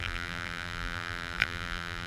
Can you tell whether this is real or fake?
fake